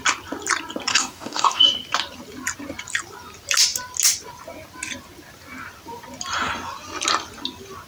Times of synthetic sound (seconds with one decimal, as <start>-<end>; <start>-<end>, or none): 0.9-1.6